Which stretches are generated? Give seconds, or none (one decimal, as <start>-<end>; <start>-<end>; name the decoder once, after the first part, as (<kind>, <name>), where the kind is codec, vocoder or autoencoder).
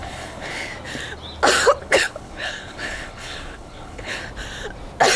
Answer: 0.0-0.7 (codec, HILCodec); 1.8-4.2